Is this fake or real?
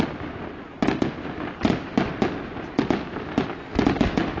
real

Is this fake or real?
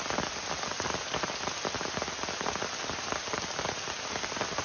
real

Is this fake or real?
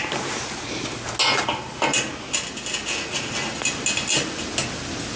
real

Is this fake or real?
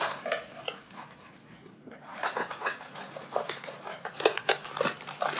real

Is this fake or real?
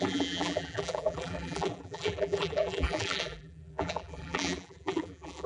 fake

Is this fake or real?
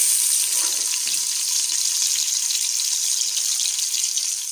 real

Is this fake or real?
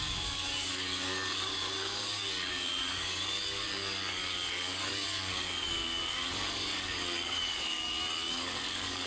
fake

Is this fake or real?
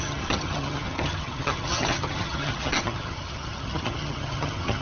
fake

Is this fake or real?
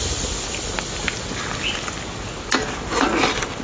real